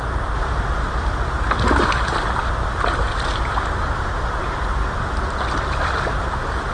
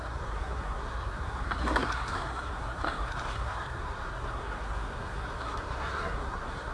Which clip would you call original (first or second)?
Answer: first